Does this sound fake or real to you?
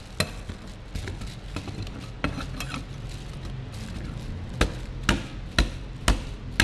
real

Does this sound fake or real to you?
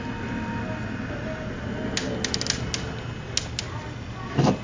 real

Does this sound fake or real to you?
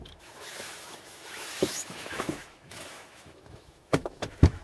fake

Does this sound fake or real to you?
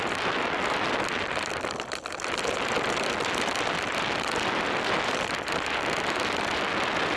real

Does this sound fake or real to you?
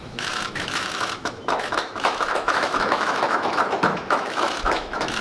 fake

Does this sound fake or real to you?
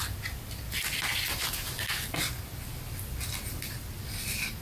real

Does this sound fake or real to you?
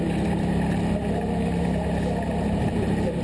real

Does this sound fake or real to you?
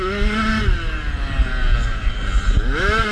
real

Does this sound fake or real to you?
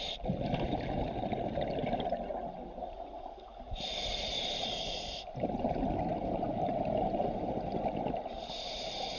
real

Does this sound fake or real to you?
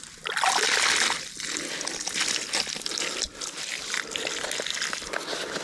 real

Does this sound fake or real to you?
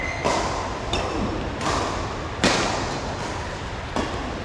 real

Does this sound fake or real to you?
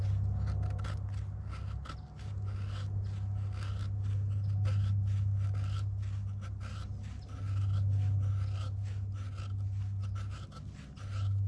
real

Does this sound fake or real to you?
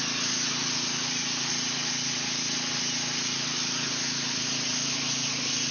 real